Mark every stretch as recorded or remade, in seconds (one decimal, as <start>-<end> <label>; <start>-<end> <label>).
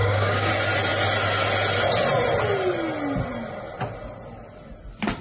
0.0-0.5 remade; 0.5-5.2 recorded